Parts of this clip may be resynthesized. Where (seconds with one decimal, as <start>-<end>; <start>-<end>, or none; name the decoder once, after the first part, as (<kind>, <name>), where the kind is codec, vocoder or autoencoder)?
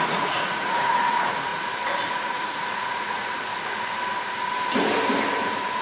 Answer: 0.0-1.5 (vocoder, Vocos); 2.1-3.5